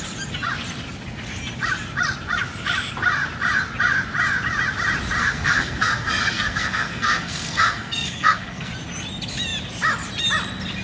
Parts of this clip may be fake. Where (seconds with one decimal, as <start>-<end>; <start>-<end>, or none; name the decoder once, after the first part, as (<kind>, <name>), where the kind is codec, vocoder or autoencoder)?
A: 5.2-8.7 (codec, SNAC)